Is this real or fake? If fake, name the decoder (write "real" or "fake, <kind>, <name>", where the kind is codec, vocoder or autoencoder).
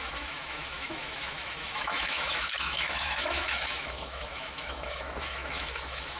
fake, autoencoder, DAC-VAE